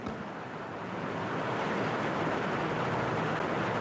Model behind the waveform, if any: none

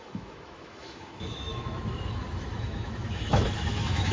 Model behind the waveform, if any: autoencoder, DAC-VAE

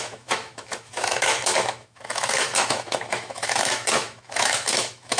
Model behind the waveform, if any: autoencoder, DAC-VAE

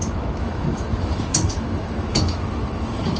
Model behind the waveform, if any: autoencoder, DAC-VAE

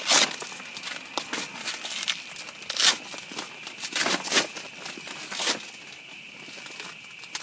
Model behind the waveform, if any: none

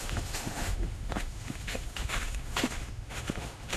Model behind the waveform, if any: autoencoder, DAC-VAE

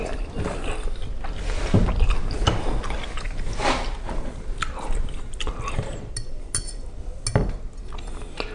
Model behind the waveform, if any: none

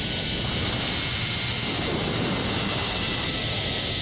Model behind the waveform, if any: none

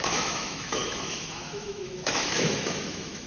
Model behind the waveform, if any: autoencoder, DAC-VAE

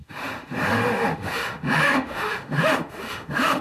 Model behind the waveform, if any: autoencoder, DAC-VAE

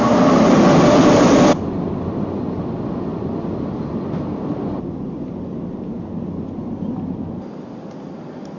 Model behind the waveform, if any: none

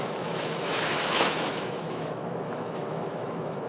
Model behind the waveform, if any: autoencoder, DAC-VAE